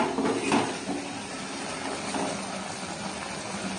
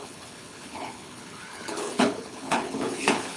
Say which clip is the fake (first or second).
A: second